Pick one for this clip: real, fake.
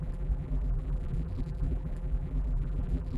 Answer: fake